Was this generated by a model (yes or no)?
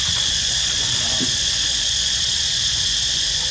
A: yes